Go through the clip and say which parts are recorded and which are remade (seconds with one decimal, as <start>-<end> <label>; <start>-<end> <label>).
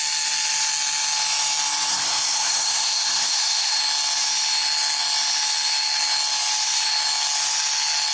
0.0-1.9 recorded; 1.9-3.8 remade; 3.8-8.1 recorded